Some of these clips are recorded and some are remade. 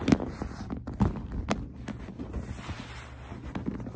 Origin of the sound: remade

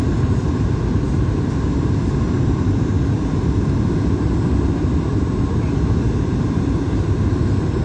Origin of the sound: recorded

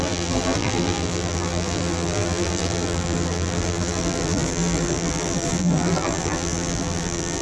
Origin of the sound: remade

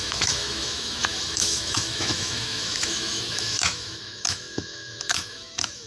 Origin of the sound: remade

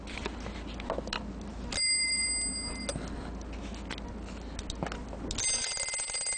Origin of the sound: recorded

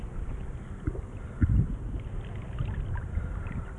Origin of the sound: recorded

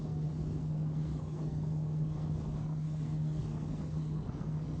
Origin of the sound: remade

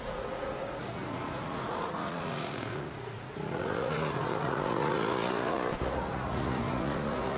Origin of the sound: remade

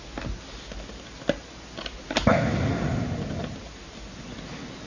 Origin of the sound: recorded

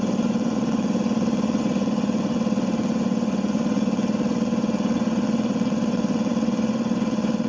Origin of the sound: remade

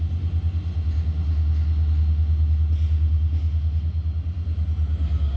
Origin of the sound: recorded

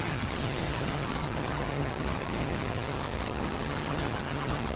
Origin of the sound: remade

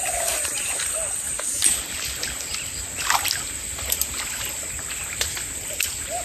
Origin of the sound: recorded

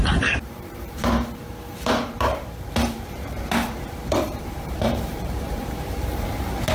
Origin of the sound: remade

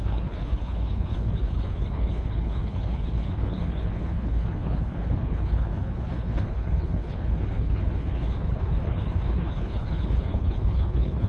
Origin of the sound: remade